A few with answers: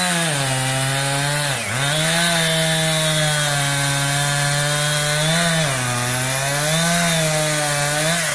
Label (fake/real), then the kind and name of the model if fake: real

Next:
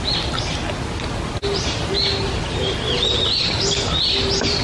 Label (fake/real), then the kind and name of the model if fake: real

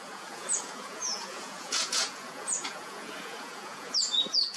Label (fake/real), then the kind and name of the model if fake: fake, vocoder, Vocos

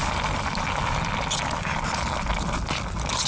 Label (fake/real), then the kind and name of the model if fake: real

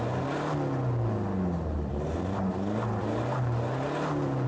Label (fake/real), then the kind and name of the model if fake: real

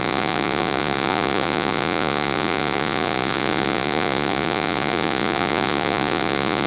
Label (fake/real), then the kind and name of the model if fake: fake, vocoder, Vocos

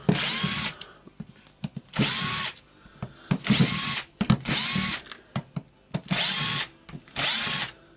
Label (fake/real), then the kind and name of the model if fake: real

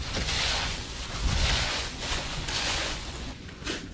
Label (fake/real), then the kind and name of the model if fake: fake, vocoder, Vocos